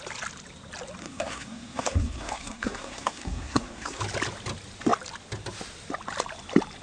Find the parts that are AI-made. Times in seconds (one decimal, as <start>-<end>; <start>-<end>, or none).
1.0-4.0

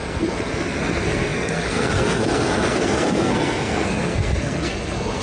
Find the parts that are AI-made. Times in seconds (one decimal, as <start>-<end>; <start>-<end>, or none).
0.0-5.2